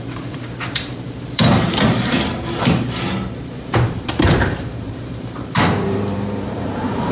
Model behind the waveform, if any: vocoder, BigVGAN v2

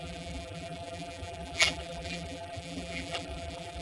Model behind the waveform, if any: vocoder, BigVGAN v2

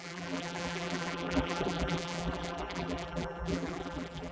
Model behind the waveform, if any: vocoder, BigVGAN v2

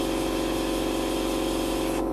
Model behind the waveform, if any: none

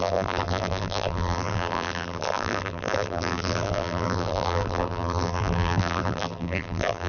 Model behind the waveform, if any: vocoder, BigVGAN v2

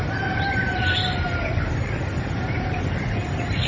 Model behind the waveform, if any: vocoder, BigVGAN v2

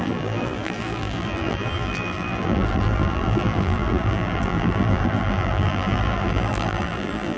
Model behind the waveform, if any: vocoder, BigVGAN v2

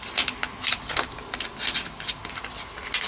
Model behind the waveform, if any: none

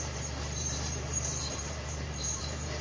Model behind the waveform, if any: vocoder, BigVGAN v2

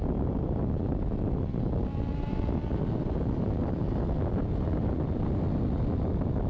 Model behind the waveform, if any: none